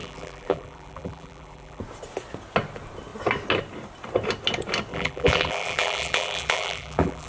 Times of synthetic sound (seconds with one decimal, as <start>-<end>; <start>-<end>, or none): 0.0-1.8; 4.9-7.3